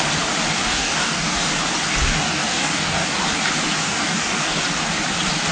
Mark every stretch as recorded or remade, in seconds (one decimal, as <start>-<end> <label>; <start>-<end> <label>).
0.0-0.6 recorded; 0.6-1.5 remade; 1.5-2.0 recorded; 2.0-3.2 remade; 3.2-3.8 recorded; 3.8-4.6 remade; 4.6-5.5 recorded